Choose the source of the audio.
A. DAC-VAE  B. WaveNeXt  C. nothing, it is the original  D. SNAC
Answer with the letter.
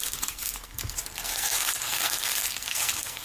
D